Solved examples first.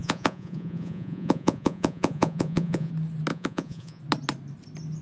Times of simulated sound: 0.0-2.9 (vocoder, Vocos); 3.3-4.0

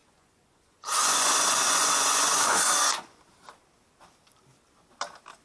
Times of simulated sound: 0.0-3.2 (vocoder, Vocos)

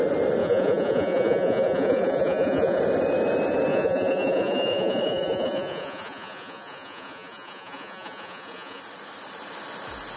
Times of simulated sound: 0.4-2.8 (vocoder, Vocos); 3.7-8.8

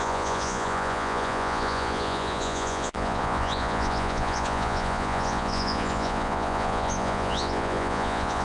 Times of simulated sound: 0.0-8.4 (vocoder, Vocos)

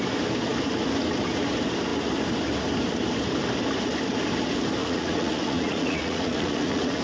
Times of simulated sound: 4.8-7.0 (vocoder, Vocos)

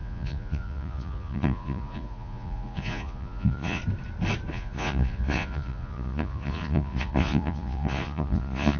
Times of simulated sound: 0.0-3.8 (vocoder, Vocos); 4.5-8.8

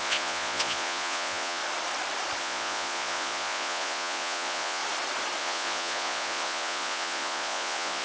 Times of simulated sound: 0.0-1.6 (vocoder, Vocos); 2.4-4.8; 5.4-8.0